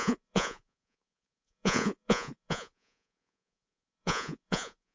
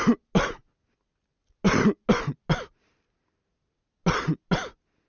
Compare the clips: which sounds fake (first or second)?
first